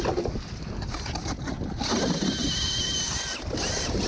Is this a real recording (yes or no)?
yes